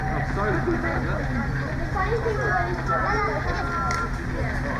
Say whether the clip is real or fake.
real